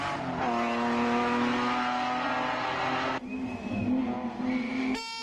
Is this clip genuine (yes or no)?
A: yes